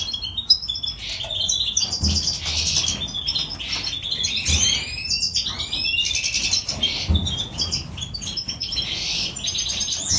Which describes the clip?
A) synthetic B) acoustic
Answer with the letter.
B